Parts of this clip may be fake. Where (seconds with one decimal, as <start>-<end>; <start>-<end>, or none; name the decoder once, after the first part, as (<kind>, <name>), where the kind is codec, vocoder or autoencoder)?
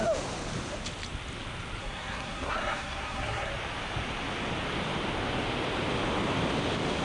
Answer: 1.8-3.5 (codec, SNAC)